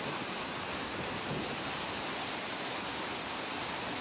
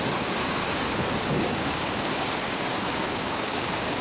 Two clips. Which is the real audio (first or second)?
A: first